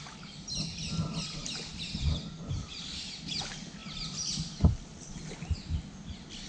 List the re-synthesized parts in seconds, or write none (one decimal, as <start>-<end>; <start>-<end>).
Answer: none